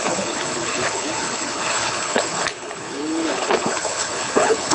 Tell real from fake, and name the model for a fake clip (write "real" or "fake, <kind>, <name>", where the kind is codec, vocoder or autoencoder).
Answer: fake, codec, HILCodec